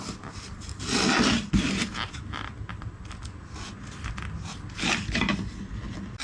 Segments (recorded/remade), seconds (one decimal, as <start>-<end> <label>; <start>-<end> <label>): 0.0-6.2 recorded